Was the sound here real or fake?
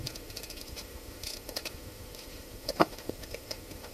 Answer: fake